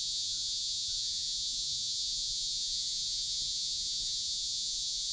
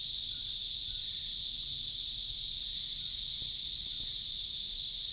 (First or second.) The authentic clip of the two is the second